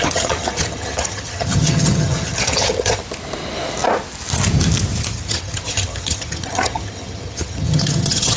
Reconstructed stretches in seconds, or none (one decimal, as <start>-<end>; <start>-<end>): 0.0-3.0; 5.1-8.4